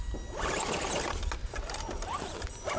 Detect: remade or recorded recorded